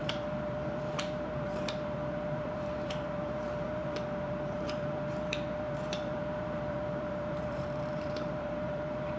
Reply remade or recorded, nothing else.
remade